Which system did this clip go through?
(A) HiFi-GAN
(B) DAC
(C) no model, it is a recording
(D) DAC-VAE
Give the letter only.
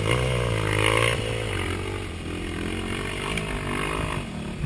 C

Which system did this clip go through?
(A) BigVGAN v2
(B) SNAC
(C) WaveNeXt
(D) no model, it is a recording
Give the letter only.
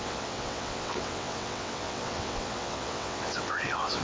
C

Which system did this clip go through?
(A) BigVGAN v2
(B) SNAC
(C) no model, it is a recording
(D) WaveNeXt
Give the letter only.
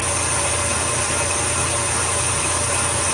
C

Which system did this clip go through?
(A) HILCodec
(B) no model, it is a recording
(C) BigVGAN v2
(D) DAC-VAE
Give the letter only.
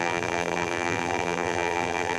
C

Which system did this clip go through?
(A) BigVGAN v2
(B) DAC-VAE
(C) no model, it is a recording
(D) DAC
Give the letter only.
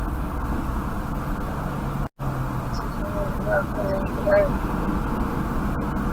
C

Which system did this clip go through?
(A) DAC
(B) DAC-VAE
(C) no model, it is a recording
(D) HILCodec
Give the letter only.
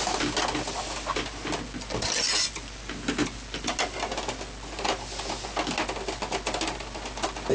C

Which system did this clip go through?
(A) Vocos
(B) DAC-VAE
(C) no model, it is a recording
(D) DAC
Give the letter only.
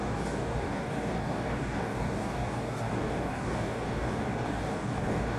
D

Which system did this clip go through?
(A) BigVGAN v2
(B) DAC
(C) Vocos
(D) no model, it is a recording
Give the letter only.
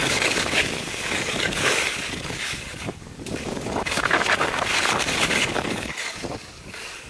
B